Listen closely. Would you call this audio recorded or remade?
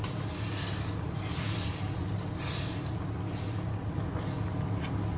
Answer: recorded